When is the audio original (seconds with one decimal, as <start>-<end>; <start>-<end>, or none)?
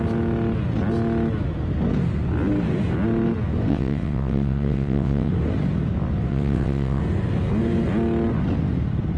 0.0-3.7; 5.3-6.3; 7.0-9.2